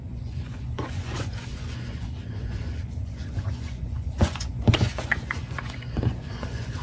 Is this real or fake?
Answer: fake